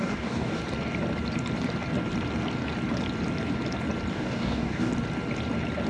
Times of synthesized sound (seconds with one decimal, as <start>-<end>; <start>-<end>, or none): 0.0-0.6; 4.1-4.9